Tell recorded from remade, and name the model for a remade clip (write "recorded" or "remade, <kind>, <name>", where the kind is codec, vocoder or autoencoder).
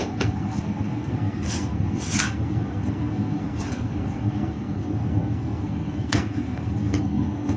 remade, codec, SNAC